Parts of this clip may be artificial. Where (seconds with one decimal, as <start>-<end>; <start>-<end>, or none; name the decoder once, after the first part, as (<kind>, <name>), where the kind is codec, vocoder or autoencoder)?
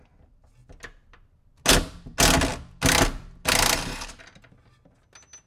none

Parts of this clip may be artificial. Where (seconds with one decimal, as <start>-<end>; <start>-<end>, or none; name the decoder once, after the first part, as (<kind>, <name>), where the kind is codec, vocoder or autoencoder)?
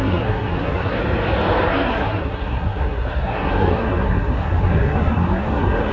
0.0-1.0 (codec, SNAC); 1.7-5.9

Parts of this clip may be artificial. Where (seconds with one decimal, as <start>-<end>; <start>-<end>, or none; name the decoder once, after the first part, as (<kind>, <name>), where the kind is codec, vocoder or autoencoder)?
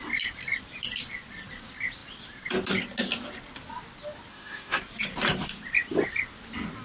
4.3-4.8 (autoencoder, DAC-VAE)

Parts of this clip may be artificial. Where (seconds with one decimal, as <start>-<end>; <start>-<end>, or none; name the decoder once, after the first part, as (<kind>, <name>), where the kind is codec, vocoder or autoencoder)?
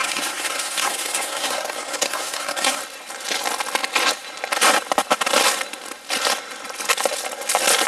0.0-2.8 (codec, SNAC)